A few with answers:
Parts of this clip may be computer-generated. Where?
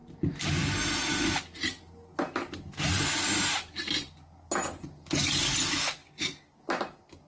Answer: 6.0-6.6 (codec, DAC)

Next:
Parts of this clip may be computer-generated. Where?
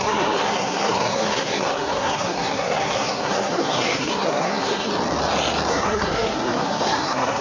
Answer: 0.0-4.9 (codec, SNAC); 5.7-7.4